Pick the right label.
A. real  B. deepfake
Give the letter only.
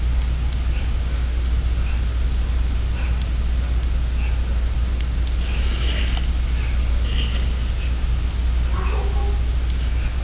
A